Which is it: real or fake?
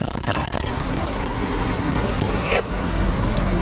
fake